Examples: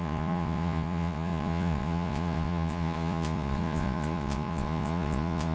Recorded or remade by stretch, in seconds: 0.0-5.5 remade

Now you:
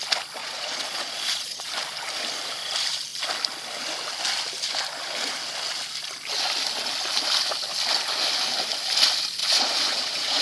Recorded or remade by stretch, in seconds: 0.0-0.4 recorded; 0.4-1.6 remade; 1.6-9.4 recorded; 9.4-10.4 remade

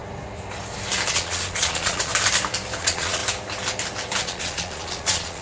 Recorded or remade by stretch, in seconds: 0.0-1.1 recorded; 1.1-2.1 remade; 2.1-2.8 recorded; 2.8-3.2 remade; 3.2-4.2 recorded; 4.2-5.4 remade

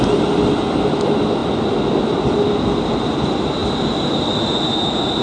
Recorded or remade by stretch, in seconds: 0.0-5.2 recorded